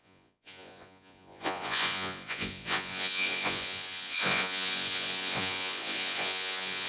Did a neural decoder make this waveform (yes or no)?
yes